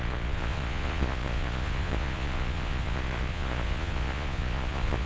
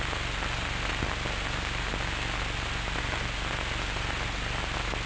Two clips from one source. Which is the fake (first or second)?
first